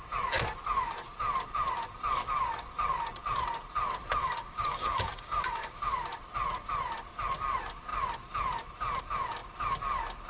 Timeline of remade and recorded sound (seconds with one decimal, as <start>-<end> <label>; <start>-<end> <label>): 0.0-4.2 recorded; 4.2-5.8 remade; 5.8-10.3 recorded